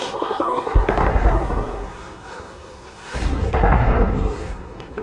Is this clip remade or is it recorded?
remade